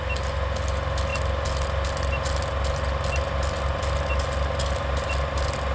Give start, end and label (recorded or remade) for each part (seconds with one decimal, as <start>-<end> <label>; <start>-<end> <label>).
0.0-5.7 recorded